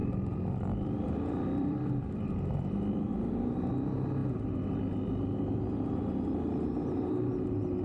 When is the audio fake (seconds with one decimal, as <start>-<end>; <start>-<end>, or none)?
0.0-3.7